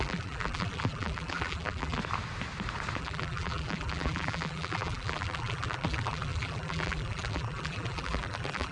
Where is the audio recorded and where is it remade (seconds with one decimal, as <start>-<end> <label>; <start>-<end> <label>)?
0.0-2.0 remade; 2.0-3.0 recorded; 3.0-8.7 remade